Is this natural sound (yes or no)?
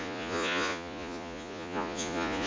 no